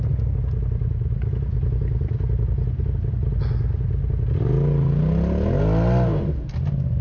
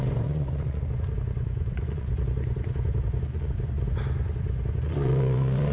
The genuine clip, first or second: first